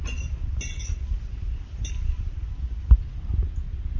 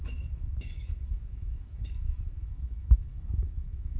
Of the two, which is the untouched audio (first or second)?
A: first